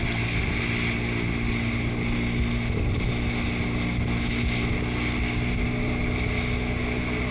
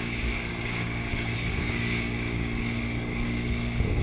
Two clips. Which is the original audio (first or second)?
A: first